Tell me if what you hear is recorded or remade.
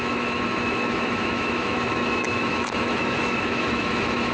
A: remade